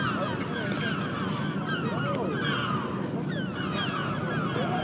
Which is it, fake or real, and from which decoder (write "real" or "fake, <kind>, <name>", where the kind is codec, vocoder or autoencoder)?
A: real